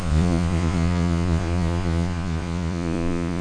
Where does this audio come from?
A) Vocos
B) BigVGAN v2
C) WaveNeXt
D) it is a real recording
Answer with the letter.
A